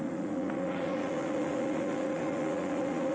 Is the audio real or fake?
fake